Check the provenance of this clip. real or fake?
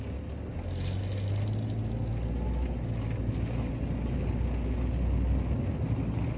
real